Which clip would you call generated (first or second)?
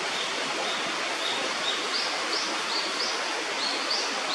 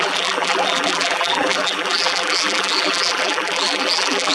second